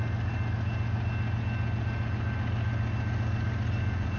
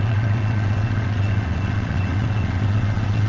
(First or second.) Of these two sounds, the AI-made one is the second